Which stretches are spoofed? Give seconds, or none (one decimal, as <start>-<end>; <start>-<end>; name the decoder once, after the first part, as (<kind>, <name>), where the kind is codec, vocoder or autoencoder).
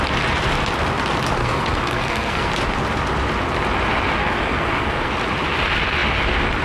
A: 1.4-2.5 (codec, SNAC); 4.2-5.1